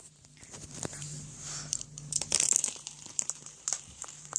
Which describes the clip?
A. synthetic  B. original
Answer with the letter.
A